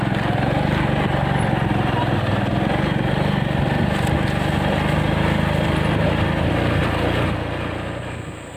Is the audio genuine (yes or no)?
yes